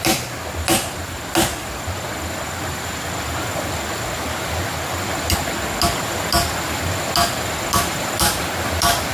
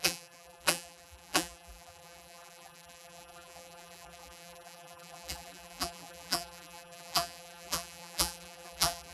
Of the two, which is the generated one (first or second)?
second